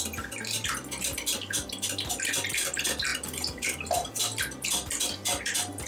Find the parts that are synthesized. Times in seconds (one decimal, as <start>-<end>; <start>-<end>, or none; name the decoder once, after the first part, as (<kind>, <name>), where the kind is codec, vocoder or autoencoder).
none